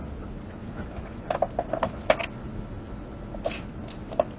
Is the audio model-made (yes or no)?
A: no